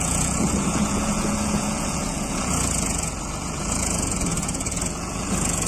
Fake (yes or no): yes